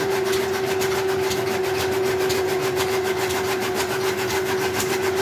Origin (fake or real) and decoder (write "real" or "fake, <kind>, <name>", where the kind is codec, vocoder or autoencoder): real